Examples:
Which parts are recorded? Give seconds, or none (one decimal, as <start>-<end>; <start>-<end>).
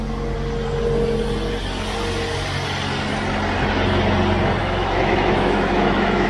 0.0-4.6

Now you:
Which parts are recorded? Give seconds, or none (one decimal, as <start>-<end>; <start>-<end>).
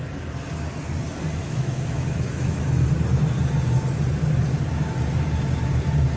0.0-1.4; 2.6-6.2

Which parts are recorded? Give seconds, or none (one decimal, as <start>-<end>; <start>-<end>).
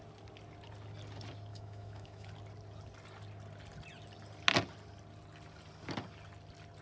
0.0-1.5; 2.3-6.8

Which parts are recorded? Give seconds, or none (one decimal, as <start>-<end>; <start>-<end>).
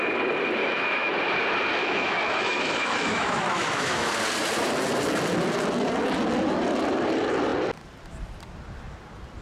0.0-0.6; 1.1-1.8; 4.1-9.4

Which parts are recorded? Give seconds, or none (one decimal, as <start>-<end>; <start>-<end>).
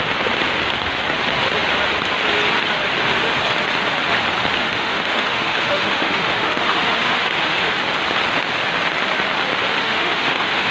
0.0-4.6; 7.7-9.8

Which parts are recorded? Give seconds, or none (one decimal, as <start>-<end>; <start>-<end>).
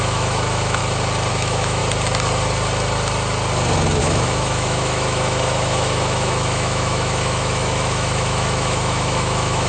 0.8-1.3; 1.8-4.0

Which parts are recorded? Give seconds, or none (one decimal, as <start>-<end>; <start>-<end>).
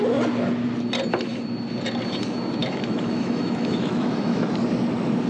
0.0-2.6; 4.5-5.3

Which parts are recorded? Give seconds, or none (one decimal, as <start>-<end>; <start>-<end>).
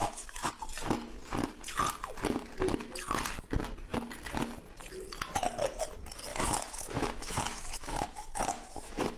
0.5-6.3